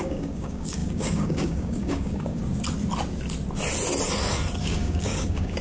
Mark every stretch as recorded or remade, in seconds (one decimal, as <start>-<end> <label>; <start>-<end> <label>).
0.0-2.4 remade; 2.4-4.6 recorded; 4.6-5.6 remade